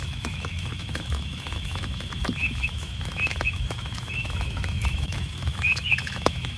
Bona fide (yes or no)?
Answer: no